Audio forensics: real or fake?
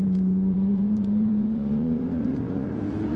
fake